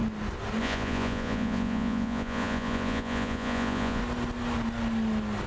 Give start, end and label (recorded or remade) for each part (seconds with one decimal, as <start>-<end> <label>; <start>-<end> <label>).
0.0-0.6 recorded; 0.6-4.0 remade; 4.0-5.5 recorded